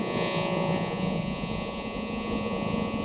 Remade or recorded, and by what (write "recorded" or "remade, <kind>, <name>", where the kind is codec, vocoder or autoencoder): remade, vocoder, Vocos